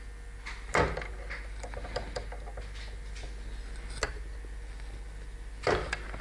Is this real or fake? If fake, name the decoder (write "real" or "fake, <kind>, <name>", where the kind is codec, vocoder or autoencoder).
real